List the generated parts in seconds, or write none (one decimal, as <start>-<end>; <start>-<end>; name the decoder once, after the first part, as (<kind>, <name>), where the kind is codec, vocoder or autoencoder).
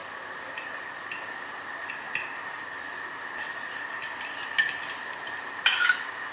none